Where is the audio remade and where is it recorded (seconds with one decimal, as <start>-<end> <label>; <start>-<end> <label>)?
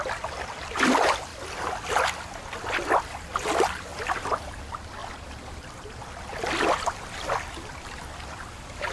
0.0-1.3 recorded; 1.3-3.4 remade; 3.4-3.9 recorded; 3.9-4.6 remade; 4.6-5.0 recorded; 5.0-5.5 remade; 5.5-8.9 recorded